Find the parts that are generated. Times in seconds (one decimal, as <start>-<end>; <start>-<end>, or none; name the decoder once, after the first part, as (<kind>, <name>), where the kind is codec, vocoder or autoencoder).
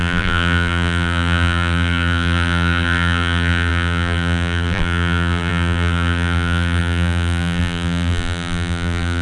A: 0.0-9.2 (vocoder, BigVGAN v2)